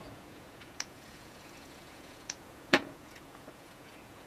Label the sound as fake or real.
fake